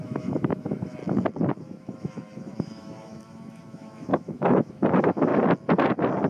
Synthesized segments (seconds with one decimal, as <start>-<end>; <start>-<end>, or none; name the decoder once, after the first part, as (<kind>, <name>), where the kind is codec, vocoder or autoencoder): 0.0-1.0 (autoencoder, DAC-VAE); 1.6-5.3